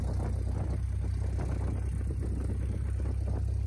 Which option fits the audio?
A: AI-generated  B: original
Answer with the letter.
B